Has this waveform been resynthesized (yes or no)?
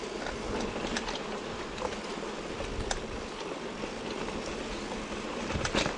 no